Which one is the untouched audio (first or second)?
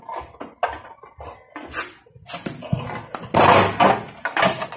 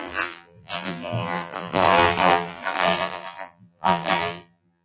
first